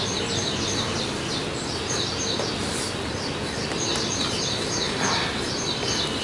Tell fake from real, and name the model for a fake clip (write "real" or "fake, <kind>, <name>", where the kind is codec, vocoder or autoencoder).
real